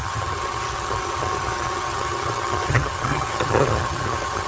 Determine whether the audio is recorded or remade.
remade